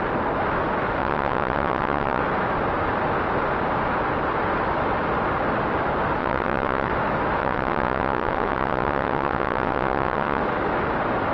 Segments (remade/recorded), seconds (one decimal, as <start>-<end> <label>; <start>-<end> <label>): 0.0-1.0 recorded; 1.0-2.2 remade; 2.2-6.2 recorded; 6.2-6.9 remade; 6.9-7.4 recorded; 7.4-10.4 remade; 10.4-11.3 recorded